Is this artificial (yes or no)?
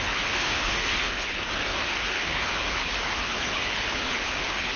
yes